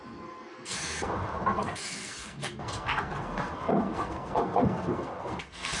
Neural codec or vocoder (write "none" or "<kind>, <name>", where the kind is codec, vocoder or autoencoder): codec, SNAC